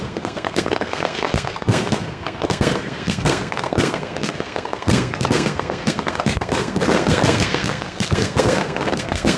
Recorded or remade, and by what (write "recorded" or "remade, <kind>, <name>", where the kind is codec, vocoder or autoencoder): remade, codec, SNAC